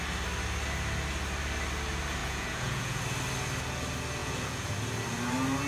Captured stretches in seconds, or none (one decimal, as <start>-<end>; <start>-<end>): 0.0-2.2; 3.0-4.2; 4.7-5.7